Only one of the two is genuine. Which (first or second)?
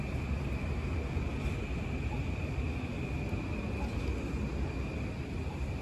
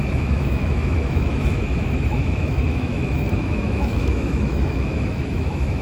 first